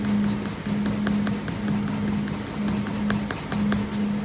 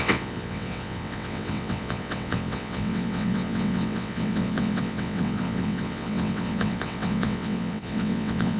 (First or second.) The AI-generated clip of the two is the second